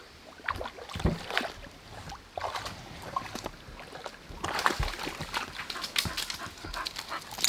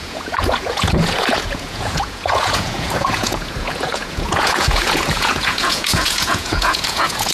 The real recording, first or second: first